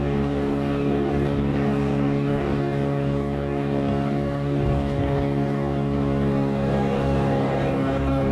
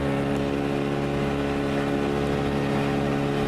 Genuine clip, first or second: second